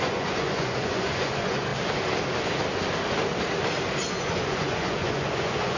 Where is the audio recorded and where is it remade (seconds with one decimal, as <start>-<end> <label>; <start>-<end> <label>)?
0.0-1.7 remade; 1.7-4.2 recorded; 4.2-5.8 remade